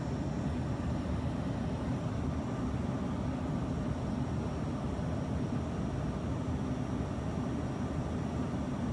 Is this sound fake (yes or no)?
no